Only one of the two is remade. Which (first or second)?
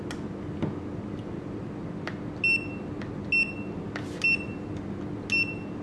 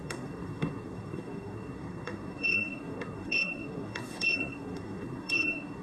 second